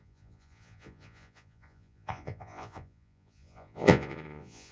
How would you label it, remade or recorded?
remade